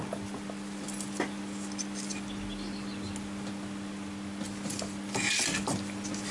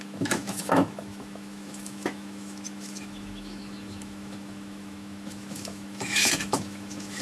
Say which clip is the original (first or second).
first